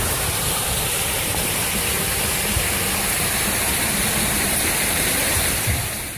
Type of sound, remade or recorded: remade